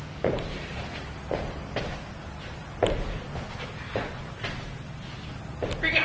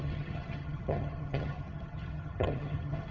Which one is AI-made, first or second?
second